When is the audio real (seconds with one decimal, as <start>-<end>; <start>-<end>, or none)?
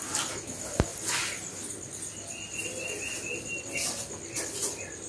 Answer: 0.0-5.1